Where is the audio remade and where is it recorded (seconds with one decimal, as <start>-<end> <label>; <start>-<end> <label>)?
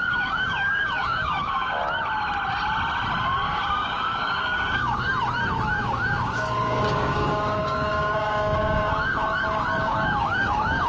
0.0-1.8 remade; 1.8-3.2 recorded; 3.2-5.1 remade; 5.1-5.8 recorded; 5.8-10.9 remade